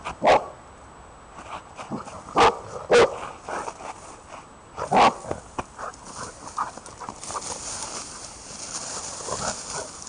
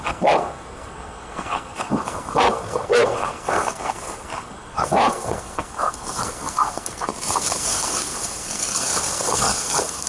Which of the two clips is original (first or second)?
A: first